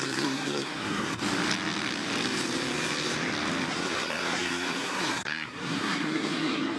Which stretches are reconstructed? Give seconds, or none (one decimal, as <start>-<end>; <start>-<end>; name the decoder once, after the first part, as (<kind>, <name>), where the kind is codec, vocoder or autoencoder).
0.0-1.2 (codec, SNAC); 3.7-6.8